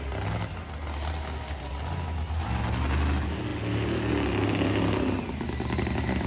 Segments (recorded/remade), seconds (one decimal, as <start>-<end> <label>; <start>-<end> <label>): 0.0-6.3 recorded

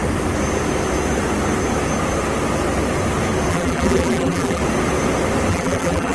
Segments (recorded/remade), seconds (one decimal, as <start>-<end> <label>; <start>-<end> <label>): 0.0-3.5 recorded; 3.5-4.6 remade; 4.6-5.5 recorded; 5.5-6.1 remade